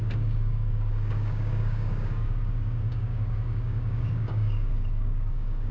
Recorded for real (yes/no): no